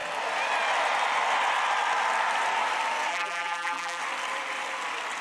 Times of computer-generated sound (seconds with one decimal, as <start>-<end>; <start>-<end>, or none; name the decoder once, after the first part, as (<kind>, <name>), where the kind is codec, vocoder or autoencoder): 3.1-4.0 (vocoder, BigVGAN v2)